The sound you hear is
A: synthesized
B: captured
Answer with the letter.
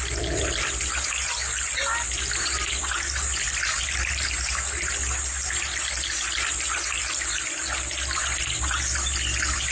B